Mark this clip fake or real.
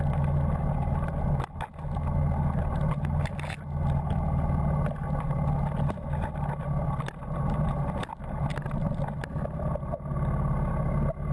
real